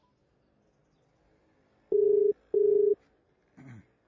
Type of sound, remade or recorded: recorded